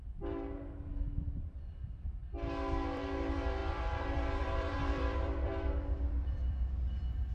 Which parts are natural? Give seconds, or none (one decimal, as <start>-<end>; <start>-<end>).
0.0-3.6; 6.7-7.3